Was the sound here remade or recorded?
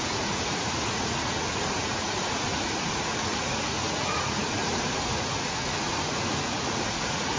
remade